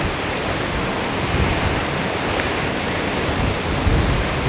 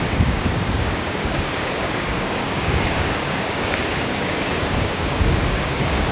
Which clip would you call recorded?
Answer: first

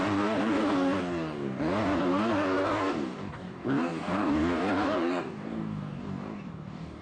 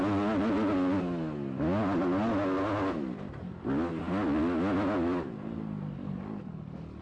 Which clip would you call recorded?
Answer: second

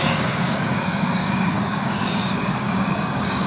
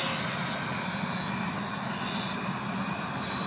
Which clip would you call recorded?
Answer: second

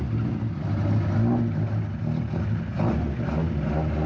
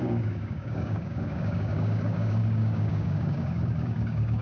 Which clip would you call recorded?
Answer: first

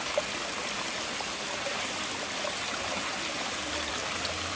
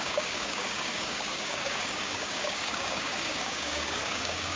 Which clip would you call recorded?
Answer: first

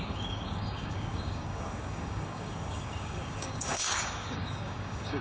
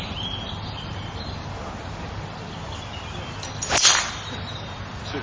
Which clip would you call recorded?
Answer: second